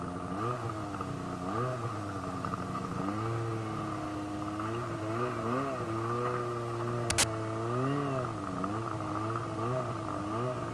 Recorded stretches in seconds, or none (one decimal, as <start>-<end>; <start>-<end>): 0.0-1.7; 3.0-10.7